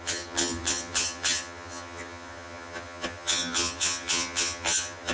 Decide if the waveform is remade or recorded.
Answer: remade